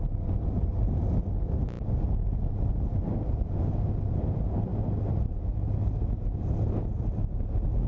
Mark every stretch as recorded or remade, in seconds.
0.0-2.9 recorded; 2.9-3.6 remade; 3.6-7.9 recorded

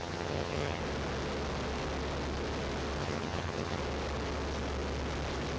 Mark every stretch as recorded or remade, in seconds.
0.0-0.8 remade; 0.8-3.0 recorded; 3.0-3.8 remade; 3.8-5.6 recorded

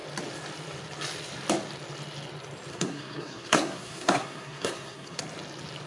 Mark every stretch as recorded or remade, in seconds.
0.0-2.7 recorded; 2.7-5.2 remade; 5.2-5.9 recorded

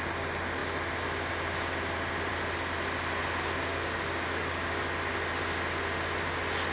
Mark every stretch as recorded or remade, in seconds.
0.0-3.7 recorded; 3.7-4.7 remade; 4.7-6.7 recorded